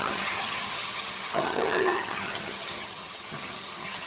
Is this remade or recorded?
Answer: remade